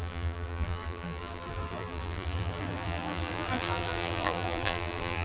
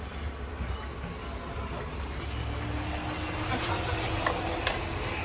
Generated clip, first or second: first